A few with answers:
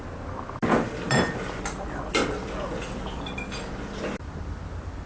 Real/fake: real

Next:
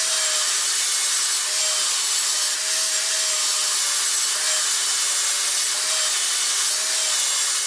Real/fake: real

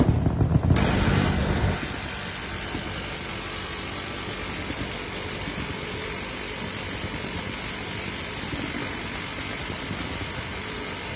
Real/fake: real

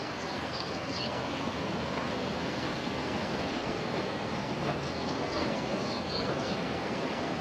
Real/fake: fake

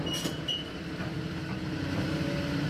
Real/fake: fake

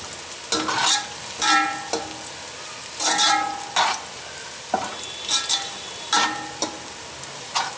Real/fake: real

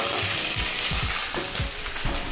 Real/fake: fake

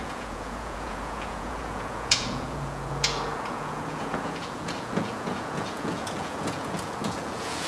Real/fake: fake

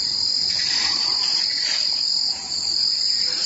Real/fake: fake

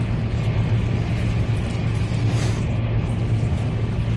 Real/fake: real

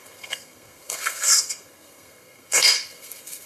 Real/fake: fake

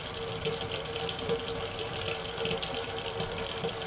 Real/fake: fake